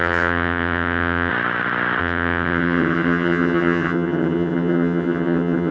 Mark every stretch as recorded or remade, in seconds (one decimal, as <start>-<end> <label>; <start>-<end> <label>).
0.0-1.3 remade; 1.3-2.0 recorded; 2.0-5.7 remade

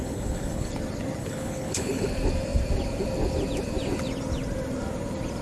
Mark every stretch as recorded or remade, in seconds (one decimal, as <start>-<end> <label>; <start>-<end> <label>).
0.0-0.7 remade; 0.7-1.2 recorded; 1.2-2.1 remade; 2.1-5.4 recorded

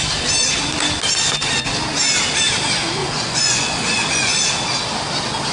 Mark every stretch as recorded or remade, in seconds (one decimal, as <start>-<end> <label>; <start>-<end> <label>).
0.0-3.0 recorded; 3.0-4.4 remade; 4.4-5.5 recorded

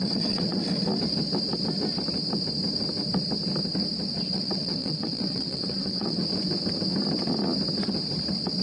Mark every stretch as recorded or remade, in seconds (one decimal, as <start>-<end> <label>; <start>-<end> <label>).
0.0-0.6 remade; 0.6-4.3 recorded; 4.3-6.2 remade; 6.2-8.6 recorded

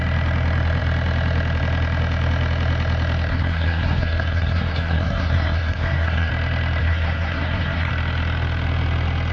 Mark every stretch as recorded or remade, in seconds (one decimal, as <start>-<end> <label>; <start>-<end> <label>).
0.0-3.3 recorded; 3.3-6.3 remade; 6.3-6.8 recorded; 6.8-7.9 remade; 7.9-9.3 recorded

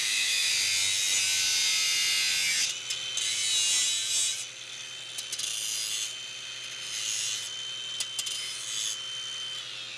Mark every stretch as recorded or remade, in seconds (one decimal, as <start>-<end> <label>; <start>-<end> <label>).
0.0-0.5 remade; 0.5-10.0 recorded

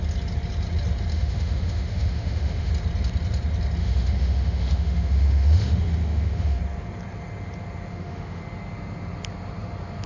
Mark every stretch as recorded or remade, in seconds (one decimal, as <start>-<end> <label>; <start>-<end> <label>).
0.0-1.1 recorded; 1.1-2.7 remade; 2.7-3.8 recorded; 3.8-6.6 remade; 6.6-7.9 recorded; 7.9-8.4 remade; 8.4-10.1 recorded